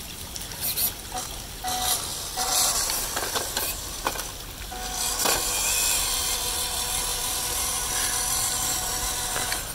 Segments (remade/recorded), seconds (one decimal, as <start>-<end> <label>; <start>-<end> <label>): 0.0-2.1 recorded; 2.1-4.2 remade; 4.2-7.1 recorded; 7.1-7.8 remade; 7.8-9.7 recorded